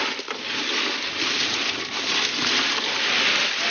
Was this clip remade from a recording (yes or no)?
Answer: no